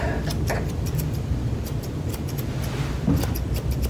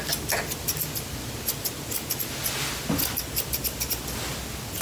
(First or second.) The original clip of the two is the second